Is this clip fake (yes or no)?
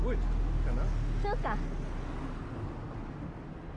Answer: no